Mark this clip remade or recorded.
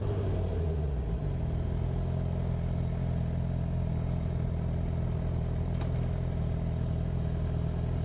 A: recorded